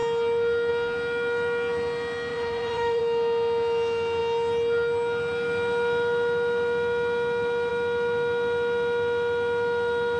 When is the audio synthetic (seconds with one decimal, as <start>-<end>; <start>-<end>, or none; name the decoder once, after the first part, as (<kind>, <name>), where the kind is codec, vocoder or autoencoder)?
2.3-3.0 (vocoder, Vocos)